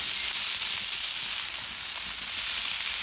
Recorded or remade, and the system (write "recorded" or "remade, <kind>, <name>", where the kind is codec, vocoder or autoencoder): recorded